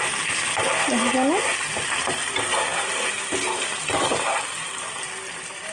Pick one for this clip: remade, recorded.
recorded